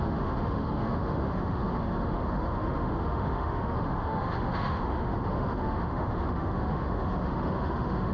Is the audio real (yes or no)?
no